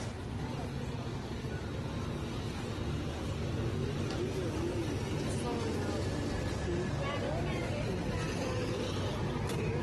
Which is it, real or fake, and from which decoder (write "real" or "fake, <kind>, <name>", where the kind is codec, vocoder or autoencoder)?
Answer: real